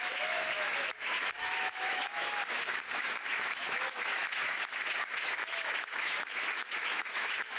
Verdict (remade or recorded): remade